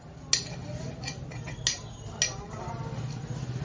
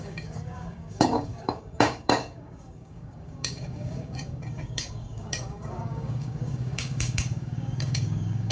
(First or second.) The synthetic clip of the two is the second